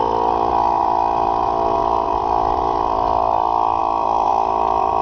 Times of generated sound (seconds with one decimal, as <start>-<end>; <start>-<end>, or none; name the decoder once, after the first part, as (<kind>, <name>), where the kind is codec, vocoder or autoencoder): none